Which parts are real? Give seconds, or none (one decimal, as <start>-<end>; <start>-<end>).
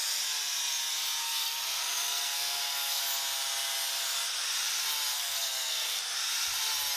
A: 0.0-1.2; 3.0-5.1; 6.0-7.0